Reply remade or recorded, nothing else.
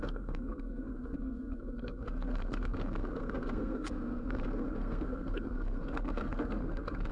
remade